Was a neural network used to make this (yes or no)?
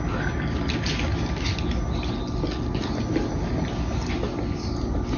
no